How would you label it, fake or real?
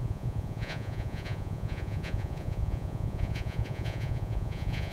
fake